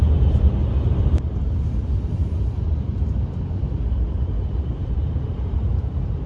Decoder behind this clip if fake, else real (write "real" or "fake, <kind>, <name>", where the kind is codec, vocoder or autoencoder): fake, vocoder, BigVGAN v2